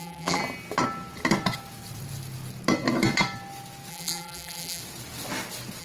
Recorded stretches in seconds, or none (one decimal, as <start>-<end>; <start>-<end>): 0.4-3.9; 4.8-5.8